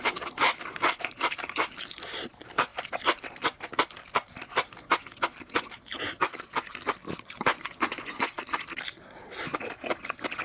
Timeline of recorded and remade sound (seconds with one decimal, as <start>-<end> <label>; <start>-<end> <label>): 0.0-7.5 recorded; 7.5-8.4 remade; 8.4-10.4 recorded